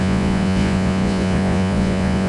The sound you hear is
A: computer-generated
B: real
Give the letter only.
A